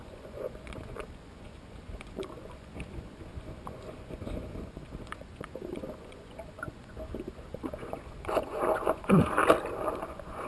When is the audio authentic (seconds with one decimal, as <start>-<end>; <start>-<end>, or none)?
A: 9.4-10.0